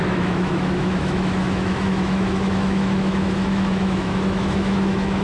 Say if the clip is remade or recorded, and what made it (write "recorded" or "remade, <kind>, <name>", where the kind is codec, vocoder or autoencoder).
remade, autoencoder, DAC-VAE